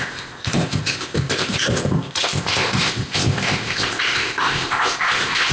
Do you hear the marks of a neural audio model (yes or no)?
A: yes